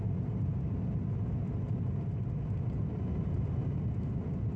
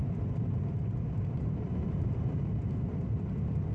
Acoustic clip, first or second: first